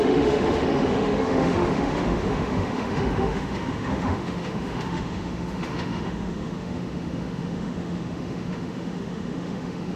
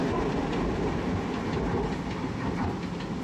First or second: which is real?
second